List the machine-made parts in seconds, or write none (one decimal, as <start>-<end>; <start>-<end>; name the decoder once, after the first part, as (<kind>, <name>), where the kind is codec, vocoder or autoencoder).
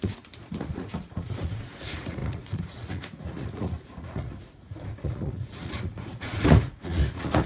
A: 0.0-7.5 (vocoder, Vocos)